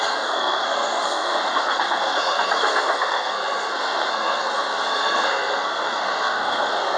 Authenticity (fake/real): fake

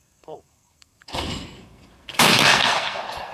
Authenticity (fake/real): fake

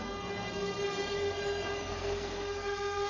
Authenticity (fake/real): fake